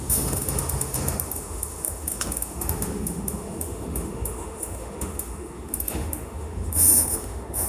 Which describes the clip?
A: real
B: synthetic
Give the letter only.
B